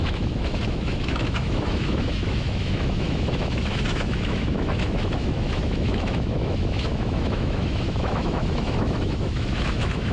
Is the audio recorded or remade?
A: remade